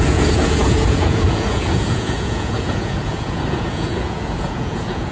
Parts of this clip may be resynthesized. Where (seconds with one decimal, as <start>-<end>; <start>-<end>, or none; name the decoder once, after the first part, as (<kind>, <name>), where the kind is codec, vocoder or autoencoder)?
0.0-5.1 (vocoder, Vocos)